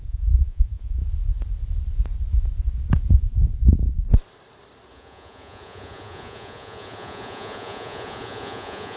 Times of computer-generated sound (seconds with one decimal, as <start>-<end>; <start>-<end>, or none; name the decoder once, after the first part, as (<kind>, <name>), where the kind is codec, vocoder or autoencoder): 0.0-1.0 (vocoder, Vocos); 3.2-3.7; 4.9-9.0